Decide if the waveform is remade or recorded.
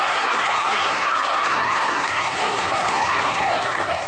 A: remade